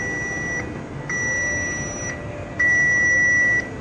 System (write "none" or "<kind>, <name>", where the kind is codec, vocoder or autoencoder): none